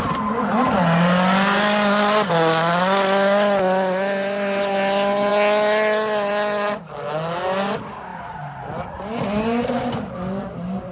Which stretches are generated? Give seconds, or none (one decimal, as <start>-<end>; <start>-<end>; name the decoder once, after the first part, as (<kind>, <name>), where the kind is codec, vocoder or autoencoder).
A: none